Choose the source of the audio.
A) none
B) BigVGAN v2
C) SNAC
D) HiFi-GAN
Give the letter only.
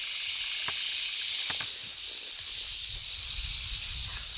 B